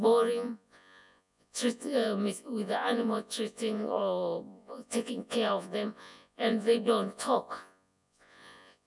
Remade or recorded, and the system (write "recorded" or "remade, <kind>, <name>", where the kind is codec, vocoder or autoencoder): remade, vocoder, Vocos